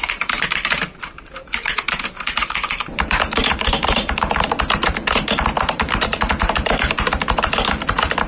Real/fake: fake